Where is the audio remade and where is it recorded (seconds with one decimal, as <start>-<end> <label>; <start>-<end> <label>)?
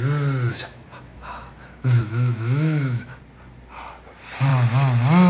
0.0-0.5 recorded; 0.5-3.2 remade; 3.2-5.3 recorded